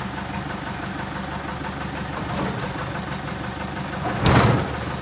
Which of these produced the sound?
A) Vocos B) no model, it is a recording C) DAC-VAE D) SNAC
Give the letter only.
B